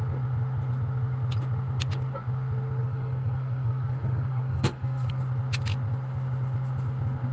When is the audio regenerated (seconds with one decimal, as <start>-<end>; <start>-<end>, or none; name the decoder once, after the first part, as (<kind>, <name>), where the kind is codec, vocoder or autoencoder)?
2.8-5.2 (codec, SNAC)